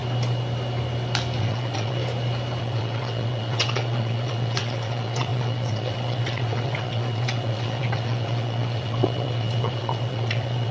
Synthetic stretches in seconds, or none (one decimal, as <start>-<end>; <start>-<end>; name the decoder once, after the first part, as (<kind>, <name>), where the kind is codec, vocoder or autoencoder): 1.4-2.0 (vocoder, WaveNeXt); 2.6-10.7